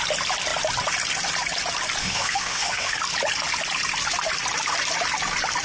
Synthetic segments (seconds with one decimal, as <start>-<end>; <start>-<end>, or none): 2.0-3.0